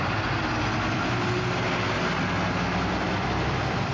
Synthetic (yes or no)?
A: no